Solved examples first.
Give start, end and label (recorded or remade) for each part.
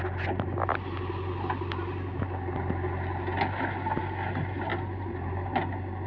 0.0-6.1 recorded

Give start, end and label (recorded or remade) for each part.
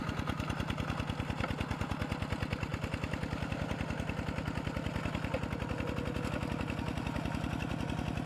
0.0-8.3 recorded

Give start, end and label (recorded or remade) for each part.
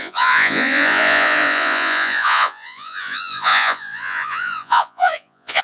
0.0-5.6 remade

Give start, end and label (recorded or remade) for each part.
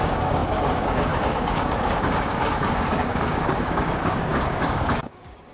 0.0-5.5 remade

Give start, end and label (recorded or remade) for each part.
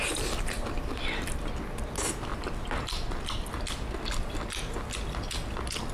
0.0-5.9 recorded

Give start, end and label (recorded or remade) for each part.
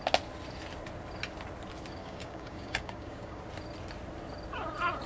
0.0-2.0 recorded; 2.0-3.4 remade; 3.4-5.1 recorded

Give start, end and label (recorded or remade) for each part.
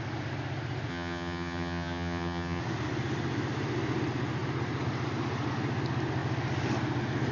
0.0-0.9 recorded; 0.9-2.6 remade; 2.6-7.3 recorded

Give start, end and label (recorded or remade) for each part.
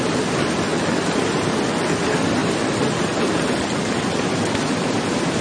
0.0-5.4 recorded